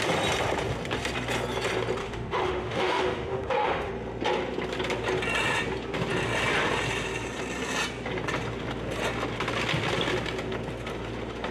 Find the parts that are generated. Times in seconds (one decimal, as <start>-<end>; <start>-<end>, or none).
2.0-3.9